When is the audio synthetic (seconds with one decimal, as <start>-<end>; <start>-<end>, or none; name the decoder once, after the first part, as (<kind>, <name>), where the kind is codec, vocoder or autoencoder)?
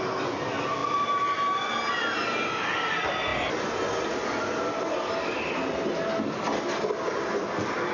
none